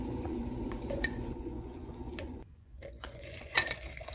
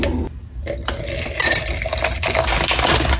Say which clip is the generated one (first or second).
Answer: first